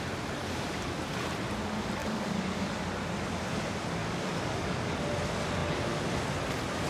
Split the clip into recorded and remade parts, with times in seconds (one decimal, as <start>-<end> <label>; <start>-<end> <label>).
0.0-2.0 recorded; 2.0-2.7 remade; 2.7-4.0 recorded; 4.0-5.0 remade; 5.0-6.9 recorded